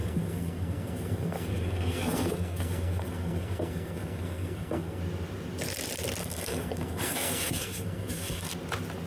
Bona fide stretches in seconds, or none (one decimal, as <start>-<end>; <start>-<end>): 5.0-6.2; 8.5-9.1